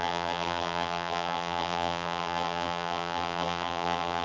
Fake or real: fake